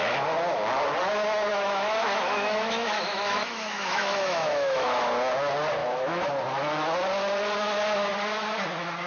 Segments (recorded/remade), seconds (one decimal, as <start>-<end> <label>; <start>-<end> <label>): 0.0-1.5 recorded; 1.5-5.0 remade; 5.0-5.8 recorded; 5.8-6.3 remade; 6.3-9.1 recorded